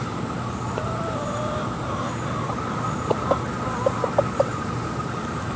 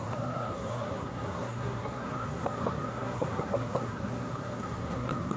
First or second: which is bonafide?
first